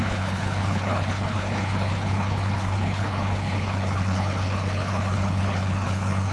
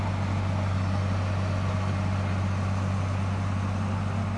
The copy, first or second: first